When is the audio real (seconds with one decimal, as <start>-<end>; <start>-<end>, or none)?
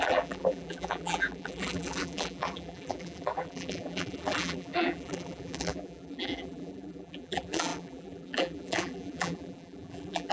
none